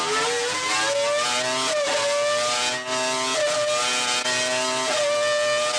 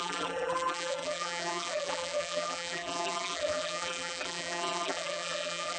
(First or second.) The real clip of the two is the first